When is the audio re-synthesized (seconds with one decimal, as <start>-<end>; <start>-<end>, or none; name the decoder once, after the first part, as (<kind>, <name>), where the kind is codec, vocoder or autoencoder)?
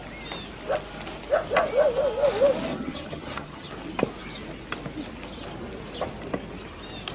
2.7-3.7 (vocoder, HiFi-GAN)